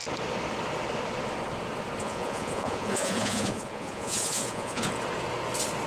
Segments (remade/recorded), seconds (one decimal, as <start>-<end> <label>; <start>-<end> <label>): 0.0-2.0 recorded; 2.0-4.9 remade; 4.9-5.9 recorded